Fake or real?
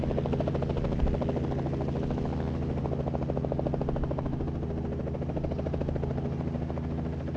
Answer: real